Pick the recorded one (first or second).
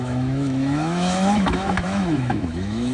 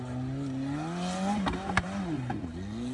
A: second